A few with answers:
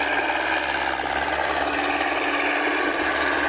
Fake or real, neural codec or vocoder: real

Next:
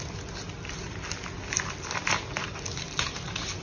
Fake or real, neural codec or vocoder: real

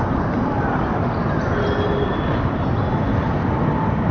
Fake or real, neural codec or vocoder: fake, vocoder, BigVGAN v2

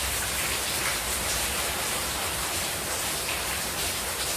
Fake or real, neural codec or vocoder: fake, vocoder, BigVGAN v2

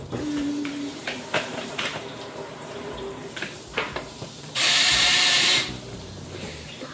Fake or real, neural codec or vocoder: fake, vocoder, BigVGAN v2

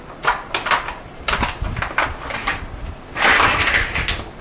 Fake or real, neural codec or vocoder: real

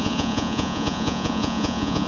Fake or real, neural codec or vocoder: fake, vocoder, Vocos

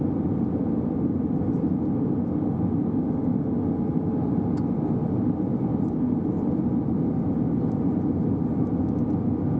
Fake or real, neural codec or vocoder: real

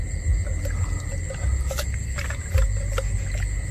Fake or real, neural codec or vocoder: real